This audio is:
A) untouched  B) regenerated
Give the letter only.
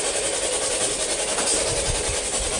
A